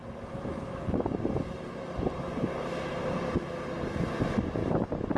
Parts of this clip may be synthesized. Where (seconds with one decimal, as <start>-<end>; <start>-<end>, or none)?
none